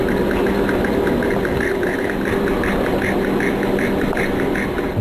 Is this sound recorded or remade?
recorded